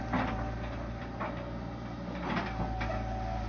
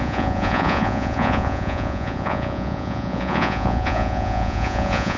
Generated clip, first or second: second